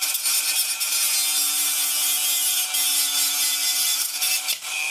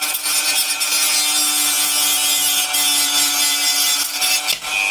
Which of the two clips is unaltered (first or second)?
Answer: second